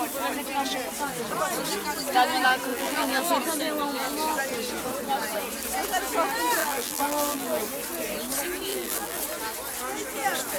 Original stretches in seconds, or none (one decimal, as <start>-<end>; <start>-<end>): 0.0-2.7; 3.3-6.6; 7.6-8.7; 9.2-10.6